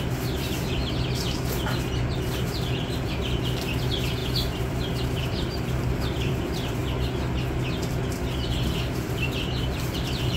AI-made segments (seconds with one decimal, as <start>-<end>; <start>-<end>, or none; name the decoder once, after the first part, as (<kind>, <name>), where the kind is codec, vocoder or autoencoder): 0.0-0.8 (vocoder, BigVGAN v2); 2.0-6.8; 8.5-10.4